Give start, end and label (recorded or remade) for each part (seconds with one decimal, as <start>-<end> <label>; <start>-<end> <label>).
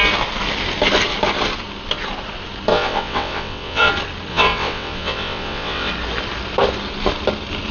0.0-2.7 recorded; 2.7-3.9 remade; 3.9-4.3 recorded; 4.3-5.9 remade; 5.9-7.7 recorded